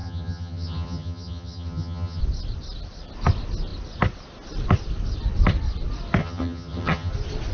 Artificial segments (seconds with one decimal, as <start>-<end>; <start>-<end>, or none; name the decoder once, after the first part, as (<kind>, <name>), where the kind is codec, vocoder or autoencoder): 0.0-2.2 (vocoder, HiFi-GAN); 6.2-7.1